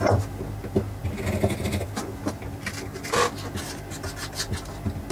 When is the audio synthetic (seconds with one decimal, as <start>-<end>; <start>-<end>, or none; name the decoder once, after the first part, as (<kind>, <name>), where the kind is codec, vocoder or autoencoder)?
none